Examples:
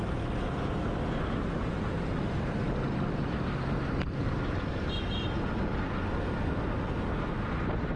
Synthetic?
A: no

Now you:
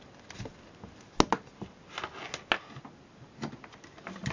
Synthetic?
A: no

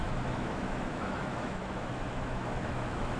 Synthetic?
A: yes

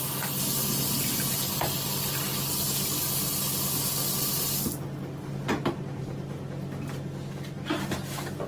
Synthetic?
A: no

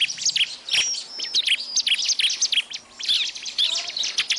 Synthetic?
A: no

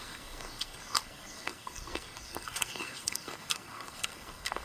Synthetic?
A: yes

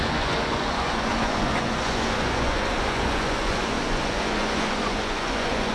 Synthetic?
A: yes